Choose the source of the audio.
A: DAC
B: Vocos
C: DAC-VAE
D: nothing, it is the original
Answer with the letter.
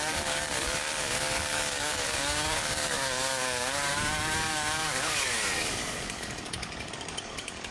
A